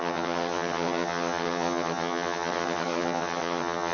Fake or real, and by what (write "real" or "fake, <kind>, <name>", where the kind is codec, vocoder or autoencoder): fake, vocoder, HiFi-GAN